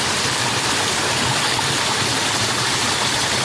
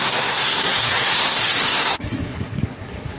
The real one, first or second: first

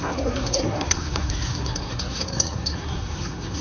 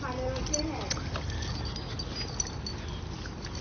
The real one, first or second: second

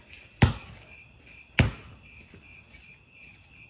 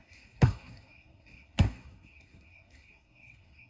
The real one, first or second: first